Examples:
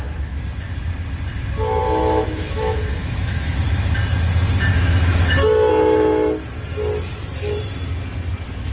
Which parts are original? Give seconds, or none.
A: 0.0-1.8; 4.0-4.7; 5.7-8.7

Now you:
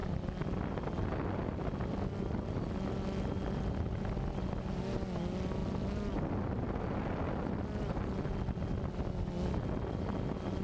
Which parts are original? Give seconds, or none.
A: 0.0-10.6

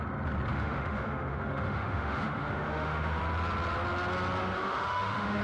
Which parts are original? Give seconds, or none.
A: 0.0-0.5; 3.2-4.4